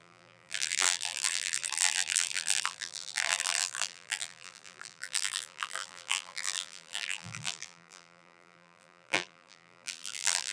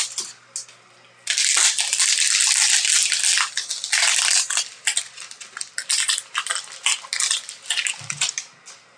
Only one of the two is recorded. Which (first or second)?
second